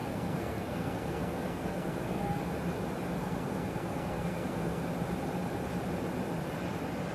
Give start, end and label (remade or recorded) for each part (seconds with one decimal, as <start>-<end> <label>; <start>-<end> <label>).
0.0-2.4 remade; 2.4-3.2 recorded; 3.2-4.8 remade; 4.8-7.1 recorded

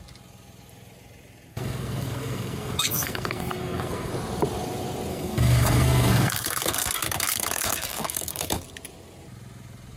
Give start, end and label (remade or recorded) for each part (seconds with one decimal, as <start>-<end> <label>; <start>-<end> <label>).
0.0-1.5 recorded; 1.5-4.1 remade; 4.1-5.1 recorded; 5.1-8.6 remade; 8.6-10.0 recorded